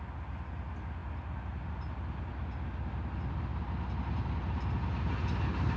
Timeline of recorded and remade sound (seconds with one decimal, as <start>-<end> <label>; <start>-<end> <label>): 0.0-5.8 recorded

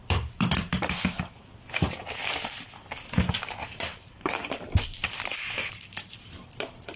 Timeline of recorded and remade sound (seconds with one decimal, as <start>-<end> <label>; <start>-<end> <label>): 0.0-1.5 remade; 1.5-3.4 recorded; 3.4-7.0 remade

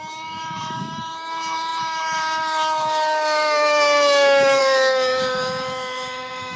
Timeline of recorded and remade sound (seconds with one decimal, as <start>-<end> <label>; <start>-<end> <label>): 0.0-6.6 remade

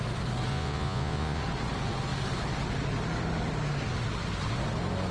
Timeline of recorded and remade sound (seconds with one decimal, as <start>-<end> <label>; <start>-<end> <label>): 0.0-0.5 recorded; 0.5-1.4 remade; 1.4-5.1 recorded

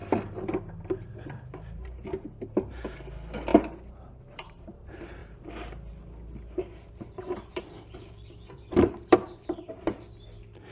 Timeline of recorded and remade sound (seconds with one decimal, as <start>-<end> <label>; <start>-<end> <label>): 0.0-3.5 remade; 3.5-4.1 recorded; 4.1-10.7 remade